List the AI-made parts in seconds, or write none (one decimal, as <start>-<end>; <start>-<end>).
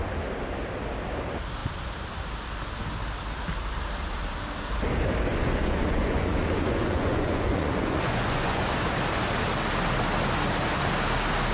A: 5.3-8.7